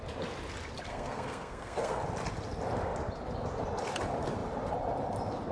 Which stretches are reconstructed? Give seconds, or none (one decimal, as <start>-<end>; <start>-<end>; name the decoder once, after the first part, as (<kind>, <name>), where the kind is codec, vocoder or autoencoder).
0.9-2.0 (codec, SNAC)